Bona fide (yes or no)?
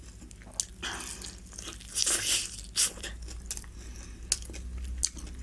yes